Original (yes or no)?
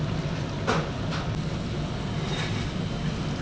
yes